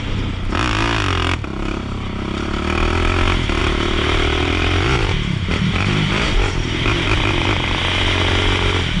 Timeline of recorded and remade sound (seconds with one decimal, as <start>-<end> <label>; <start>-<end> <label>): 0.0-1.5 recorded; 1.5-2.5 remade; 2.5-3.6 recorded; 3.6-7.2 remade; 7.2-9.0 recorded